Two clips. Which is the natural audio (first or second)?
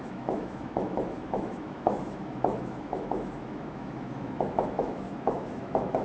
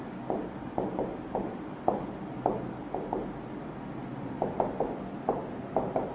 second